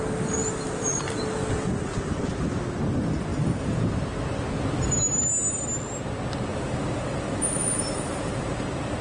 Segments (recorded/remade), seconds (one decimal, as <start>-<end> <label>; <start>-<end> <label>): 0.0-0.4 recorded; 0.4-1.2 remade; 1.2-3.3 recorded; 3.3-4.0 remade; 4.0-6.5 recorded; 6.5-8.3 remade; 8.3-9.0 recorded